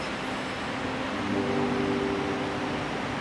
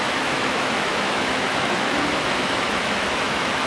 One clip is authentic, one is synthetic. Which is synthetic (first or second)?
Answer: second